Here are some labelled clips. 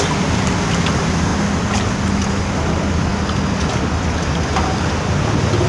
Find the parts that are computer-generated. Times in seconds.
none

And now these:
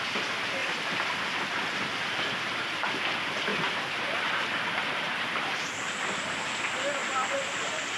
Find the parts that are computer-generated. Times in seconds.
0.6-2.8 (vocoder, BigVGAN v2); 3.5-6.6; 7.0-7.6

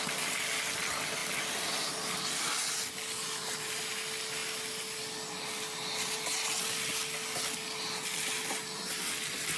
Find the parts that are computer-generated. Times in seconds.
none

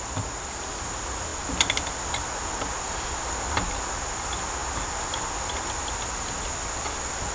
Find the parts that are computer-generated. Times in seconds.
none

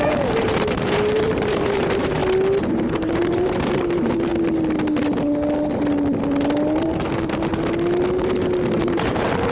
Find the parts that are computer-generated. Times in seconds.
0.0-2.2 (vocoder, BigVGAN v2); 2.7-4.3; 6.8-7.5; 8.8-9.5

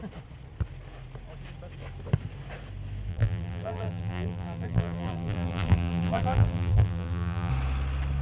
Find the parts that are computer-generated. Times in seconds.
3.1-7.5 (vocoder, BigVGAN v2)

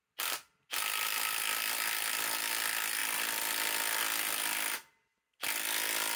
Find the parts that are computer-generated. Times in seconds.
none

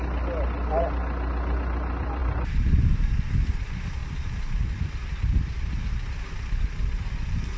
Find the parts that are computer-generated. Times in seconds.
2.2-3.1 (vocoder, BigVGAN v2); 4.0-5.6